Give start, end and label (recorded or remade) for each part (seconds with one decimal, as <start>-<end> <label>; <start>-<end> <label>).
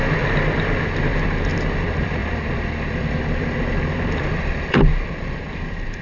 0.0-6.0 remade